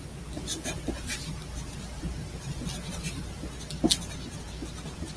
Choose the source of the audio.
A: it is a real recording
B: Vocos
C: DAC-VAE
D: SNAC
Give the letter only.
A